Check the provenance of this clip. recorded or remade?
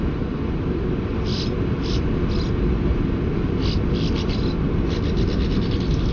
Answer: recorded